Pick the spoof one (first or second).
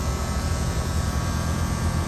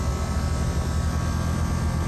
first